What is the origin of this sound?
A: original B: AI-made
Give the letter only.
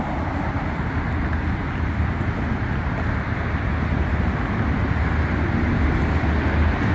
A